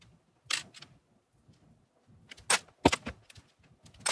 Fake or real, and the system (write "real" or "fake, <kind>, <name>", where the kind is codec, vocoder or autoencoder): real